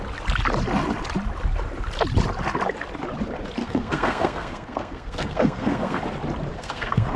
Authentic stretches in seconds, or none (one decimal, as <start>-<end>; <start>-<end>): 0.0-3.6; 6.0-6.5